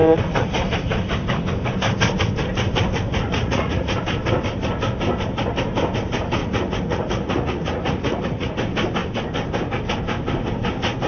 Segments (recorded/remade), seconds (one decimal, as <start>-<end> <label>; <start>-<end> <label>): 0.0-3.1 recorded; 3.1-4.0 remade; 4.0-6.4 recorded; 6.4-8.5 remade; 8.5-11.1 recorded